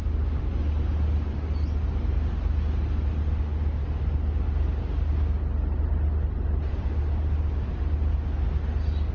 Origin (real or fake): real